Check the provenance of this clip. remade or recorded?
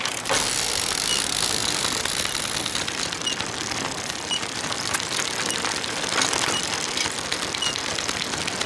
recorded